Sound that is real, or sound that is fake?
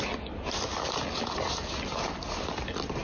real